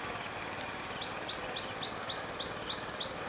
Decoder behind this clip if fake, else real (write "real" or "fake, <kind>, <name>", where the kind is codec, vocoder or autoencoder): real